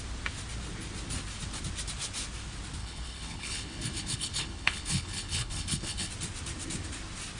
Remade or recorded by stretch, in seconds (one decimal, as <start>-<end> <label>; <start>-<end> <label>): 0.0-2.8 recorded; 2.8-6.1 remade; 6.1-7.4 recorded